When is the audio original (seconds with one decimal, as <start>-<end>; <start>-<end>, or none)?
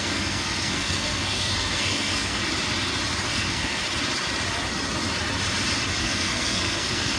2.4-3.3; 3.8-6.0